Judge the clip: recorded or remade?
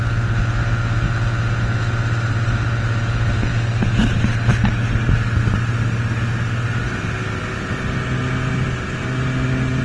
recorded